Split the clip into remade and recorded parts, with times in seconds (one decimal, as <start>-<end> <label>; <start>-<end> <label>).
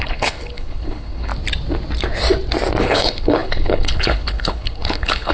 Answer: 0.0-1.3 remade; 1.3-2.8 recorded; 2.8-5.3 remade